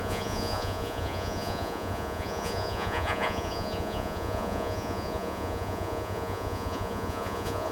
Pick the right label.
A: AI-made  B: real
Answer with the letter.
A